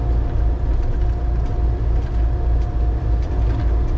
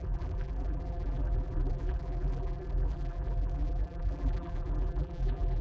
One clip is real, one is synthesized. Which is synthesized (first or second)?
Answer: second